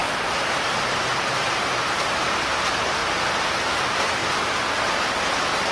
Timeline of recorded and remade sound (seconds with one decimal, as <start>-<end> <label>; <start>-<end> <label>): 0.0-3.0 remade; 3.0-3.7 recorded; 3.7-4.2 remade; 4.2-5.0 recorded; 5.0-5.7 remade